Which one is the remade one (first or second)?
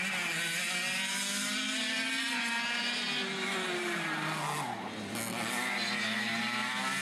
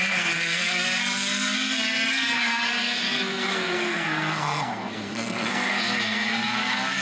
second